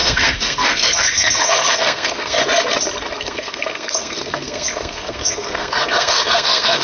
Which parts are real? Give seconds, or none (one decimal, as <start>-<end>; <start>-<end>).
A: 2.4-3.2